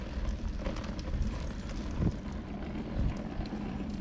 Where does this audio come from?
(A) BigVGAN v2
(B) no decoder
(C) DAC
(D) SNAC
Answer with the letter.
B